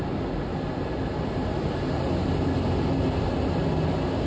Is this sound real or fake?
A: real